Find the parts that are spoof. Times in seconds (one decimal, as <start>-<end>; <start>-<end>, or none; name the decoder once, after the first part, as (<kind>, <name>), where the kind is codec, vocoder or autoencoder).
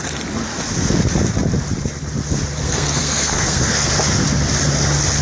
2.6-3.9 (codec, SNAC)